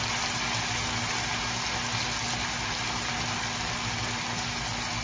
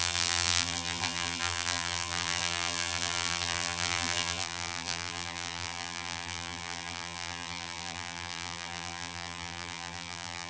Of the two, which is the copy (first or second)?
second